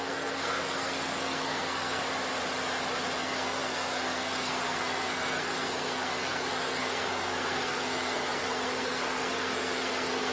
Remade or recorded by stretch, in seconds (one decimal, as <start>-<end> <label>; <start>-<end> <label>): 0.0-2.0 remade; 2.0-3.2 recorded; 3.2-10.3 remade